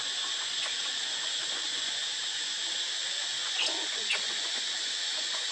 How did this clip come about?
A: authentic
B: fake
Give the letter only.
B